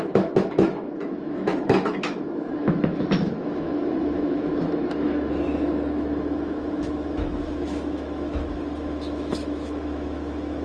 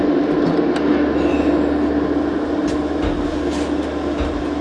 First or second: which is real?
second